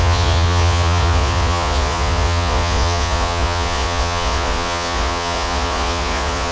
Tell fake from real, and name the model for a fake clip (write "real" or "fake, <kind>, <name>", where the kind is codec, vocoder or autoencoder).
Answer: fake, vocoder, Vocos